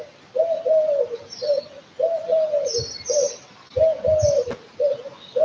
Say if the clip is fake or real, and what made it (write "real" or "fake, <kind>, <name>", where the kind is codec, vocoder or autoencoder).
real